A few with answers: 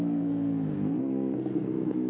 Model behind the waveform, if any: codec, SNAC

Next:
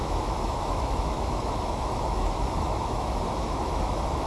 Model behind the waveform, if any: autoencoder, DAC-VAE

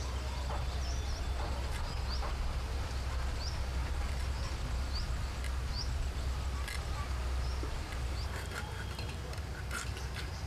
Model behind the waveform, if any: none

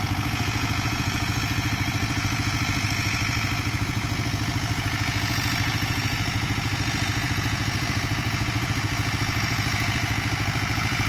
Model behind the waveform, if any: vocoder, Vocos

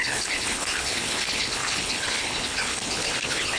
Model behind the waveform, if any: codec, HILCodec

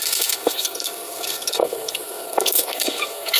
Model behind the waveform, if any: codec, SNAC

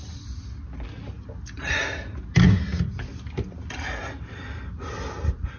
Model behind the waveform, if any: none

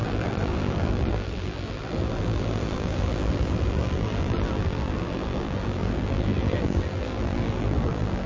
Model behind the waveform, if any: vocoder, BigVGAN v2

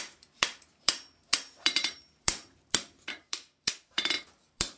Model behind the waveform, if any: vocoder, BigVGAN v2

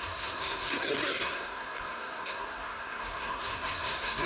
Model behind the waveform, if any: codec, SNAC